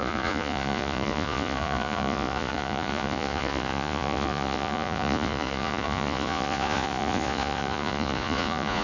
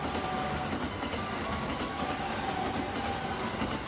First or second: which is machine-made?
first